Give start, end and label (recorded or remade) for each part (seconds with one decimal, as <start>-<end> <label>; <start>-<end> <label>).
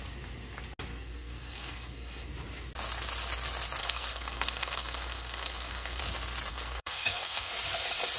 0.0-0.9 recorded; 0.9-2.3 remade; 2.3-3.8 recorded; 3.8-6.0 remade; 6.0-6.5 recorded; 6.5-7.5 remade; 7.5-8.2 recorded